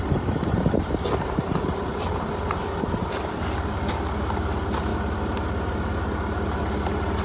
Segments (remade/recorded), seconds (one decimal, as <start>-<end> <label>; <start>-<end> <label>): 0.0-7.2 recorded